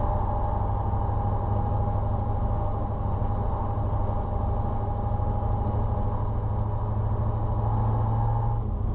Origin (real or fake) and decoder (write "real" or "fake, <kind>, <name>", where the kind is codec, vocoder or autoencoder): real